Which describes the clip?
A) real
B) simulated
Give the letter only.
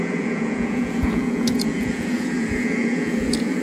B